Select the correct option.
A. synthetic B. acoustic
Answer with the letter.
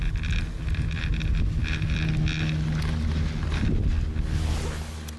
B